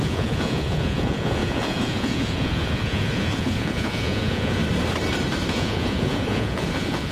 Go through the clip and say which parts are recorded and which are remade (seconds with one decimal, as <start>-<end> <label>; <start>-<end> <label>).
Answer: 0.0-4.6 remade; 4.6-5.5 recorded; 5.5-7.1 remade